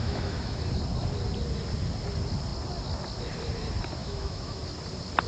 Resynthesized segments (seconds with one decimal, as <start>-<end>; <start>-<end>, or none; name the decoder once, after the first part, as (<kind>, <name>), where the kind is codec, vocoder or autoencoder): 0.0-0.6 (autoencoder, DAC-VAE); 4.0-4.6